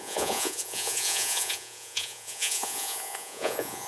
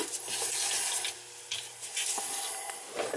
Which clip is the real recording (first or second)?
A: second